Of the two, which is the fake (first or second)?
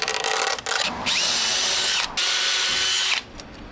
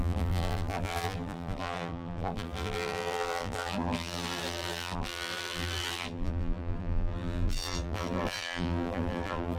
second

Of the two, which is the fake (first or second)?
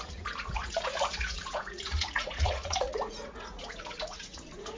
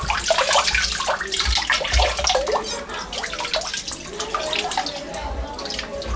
first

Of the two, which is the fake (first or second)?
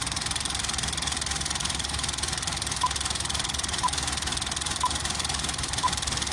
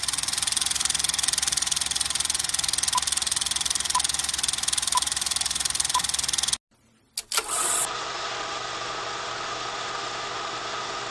first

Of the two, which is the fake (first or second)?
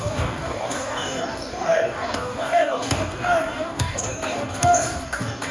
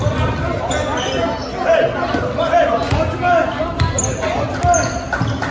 first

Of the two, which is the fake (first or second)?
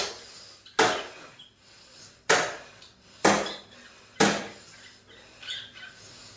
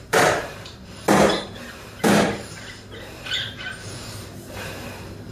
second